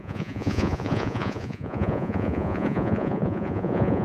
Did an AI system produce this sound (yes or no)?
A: yes